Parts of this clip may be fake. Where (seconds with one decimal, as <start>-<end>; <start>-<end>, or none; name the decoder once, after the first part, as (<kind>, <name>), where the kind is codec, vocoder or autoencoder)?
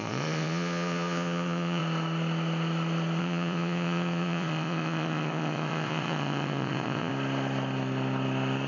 0.0-1.8 (vocoder, Vocos); 3.2-7.1